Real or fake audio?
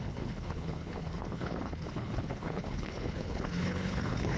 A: fake